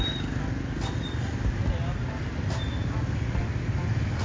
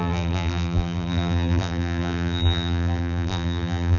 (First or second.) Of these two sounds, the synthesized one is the second